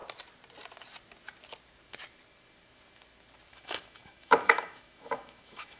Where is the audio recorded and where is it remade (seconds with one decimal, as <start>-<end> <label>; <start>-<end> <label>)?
0.0-3.5 recorded; 3.5-5.8 remade